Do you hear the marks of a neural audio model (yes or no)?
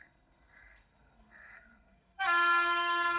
yes